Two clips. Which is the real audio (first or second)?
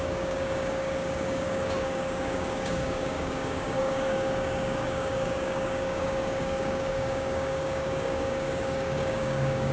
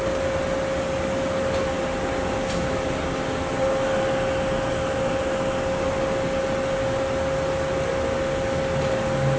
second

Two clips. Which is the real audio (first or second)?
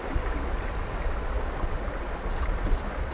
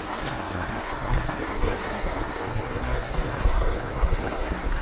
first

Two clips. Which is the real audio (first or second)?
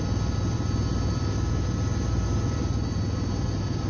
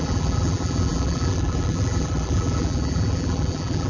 first